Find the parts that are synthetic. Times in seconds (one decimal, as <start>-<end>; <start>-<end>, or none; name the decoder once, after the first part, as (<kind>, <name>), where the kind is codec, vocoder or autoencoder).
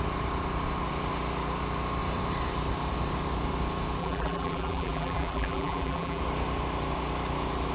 4.0-6.2 (vocoder, BigVGAN v2)